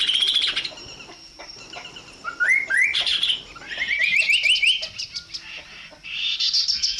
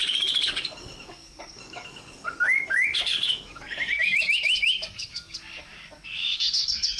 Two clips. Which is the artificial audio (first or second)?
second